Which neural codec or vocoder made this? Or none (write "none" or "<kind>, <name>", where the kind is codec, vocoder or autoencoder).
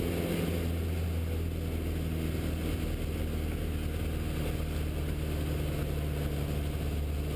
none